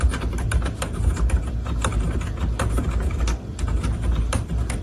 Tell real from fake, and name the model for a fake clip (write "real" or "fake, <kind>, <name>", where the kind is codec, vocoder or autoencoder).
real